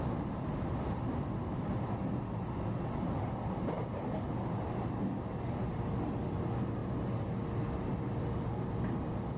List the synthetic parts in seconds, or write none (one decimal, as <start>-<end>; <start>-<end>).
none